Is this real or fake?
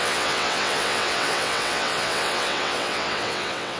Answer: fake